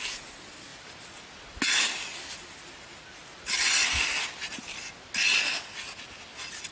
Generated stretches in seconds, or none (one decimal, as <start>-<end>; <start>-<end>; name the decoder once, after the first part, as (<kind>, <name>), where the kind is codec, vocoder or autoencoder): none